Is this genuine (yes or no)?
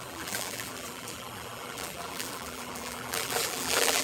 no